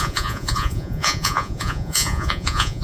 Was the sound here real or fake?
fake